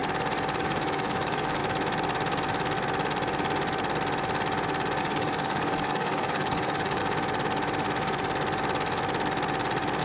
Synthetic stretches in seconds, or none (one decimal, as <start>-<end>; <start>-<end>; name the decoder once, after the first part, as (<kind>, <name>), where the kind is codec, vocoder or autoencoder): 0.6-1.6 (codec, DAC); 5.0-7.0